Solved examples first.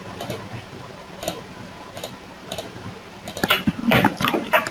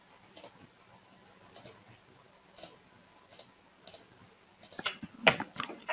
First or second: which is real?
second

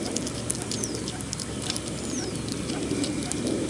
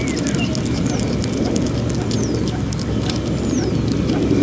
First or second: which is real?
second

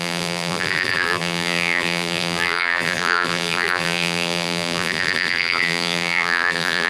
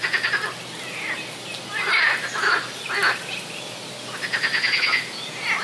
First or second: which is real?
second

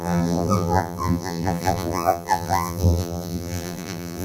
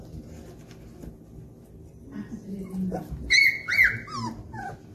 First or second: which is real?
second